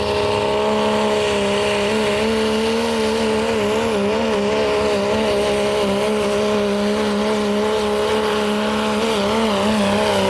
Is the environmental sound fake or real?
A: real